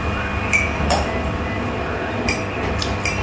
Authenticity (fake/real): real